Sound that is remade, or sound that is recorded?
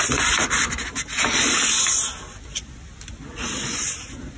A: recorded